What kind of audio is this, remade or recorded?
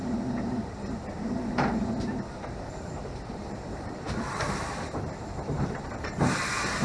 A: remade